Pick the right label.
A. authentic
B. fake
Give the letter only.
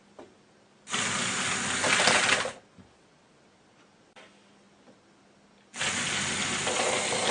A